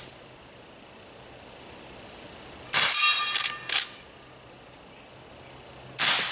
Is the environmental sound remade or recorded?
recorded